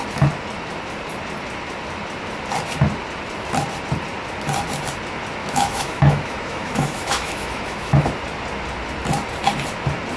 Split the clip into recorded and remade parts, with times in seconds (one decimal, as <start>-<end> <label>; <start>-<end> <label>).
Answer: 0.0-5.4 recorded; 5.4-8.1 remade; 8.1-10.2 recorded